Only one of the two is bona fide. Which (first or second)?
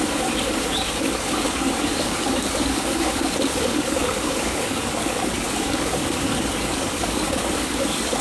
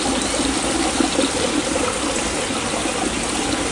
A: second